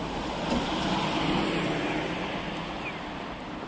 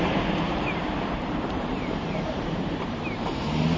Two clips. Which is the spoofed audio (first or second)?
second